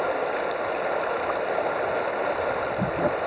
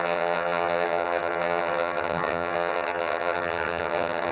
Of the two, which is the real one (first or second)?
first